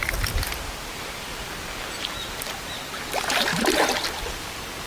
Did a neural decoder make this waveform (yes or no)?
no